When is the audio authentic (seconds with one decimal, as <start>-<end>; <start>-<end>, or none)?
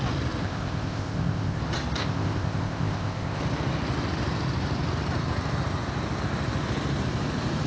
0.0-0.4; 1.6-2.0; 3.4-7.7